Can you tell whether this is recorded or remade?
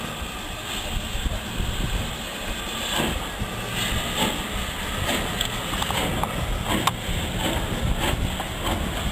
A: recorded